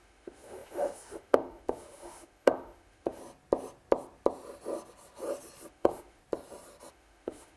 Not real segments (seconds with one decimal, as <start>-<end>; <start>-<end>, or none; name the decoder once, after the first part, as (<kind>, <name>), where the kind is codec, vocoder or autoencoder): 0.0-3.2 (autoencoder, DAC-VAE); 5.7-6.2; 6.9-7.6